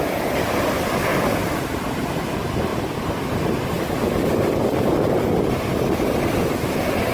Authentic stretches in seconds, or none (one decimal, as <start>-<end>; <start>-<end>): 0.0-7.1